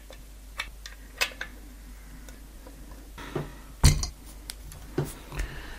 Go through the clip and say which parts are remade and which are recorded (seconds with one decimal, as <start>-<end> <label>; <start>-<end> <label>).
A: 0.0-5.8 recorded